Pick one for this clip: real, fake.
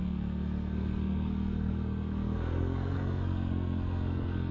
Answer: fake